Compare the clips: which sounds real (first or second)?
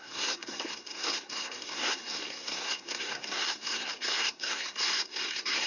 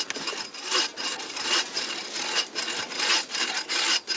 second